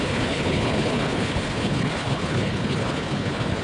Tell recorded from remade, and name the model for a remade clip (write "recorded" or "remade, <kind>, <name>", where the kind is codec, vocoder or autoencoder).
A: remade, codec, HILCodec